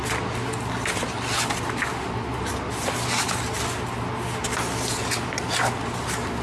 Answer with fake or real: real